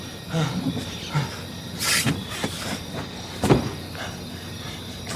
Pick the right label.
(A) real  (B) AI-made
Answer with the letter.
A